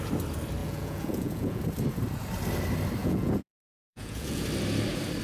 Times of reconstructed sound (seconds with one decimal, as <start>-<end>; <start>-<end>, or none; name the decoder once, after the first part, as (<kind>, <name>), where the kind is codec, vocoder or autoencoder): 0.6-1.6 (vocoder, Vocos); 3.0-4.4